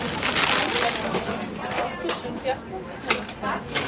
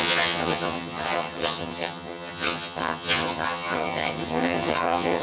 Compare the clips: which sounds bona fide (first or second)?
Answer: first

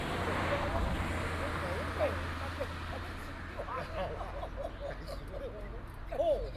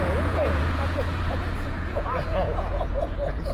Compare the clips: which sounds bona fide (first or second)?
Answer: first